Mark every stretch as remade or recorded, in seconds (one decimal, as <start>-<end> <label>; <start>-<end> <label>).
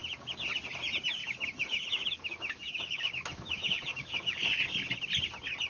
0.0-1.2 recorded; 1.2-4.6 remade; 4.6-5.7 recorded